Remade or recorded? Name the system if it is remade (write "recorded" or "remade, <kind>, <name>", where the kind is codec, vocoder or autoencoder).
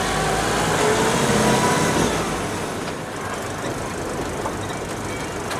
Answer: recorded